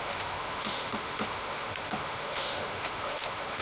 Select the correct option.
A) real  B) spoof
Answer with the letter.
B